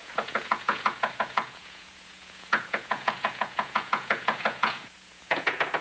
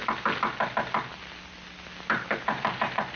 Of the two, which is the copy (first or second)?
first